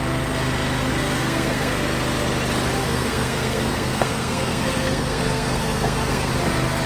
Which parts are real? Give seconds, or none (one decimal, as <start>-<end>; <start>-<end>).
0.0-0.9; 1.8-2.8; 6.3-6.9